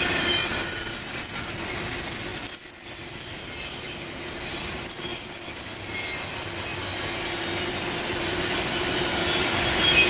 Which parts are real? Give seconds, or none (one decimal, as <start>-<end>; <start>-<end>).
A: 0.0-10.1